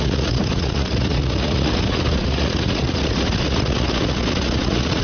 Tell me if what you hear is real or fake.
fake